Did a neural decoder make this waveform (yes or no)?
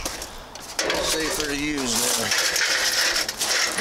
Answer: no